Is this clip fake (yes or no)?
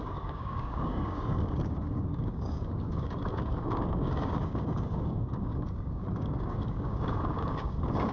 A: yes